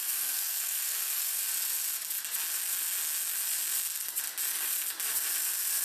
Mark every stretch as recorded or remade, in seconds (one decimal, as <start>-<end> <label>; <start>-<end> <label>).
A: 0.0-1.4 remade; 1.4-5.8 recorded